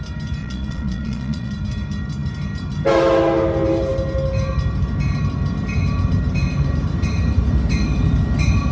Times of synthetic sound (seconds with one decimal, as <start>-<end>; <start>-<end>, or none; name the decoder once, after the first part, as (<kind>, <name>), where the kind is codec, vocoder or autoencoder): 0.4-1.5 (vocoder, Vocos)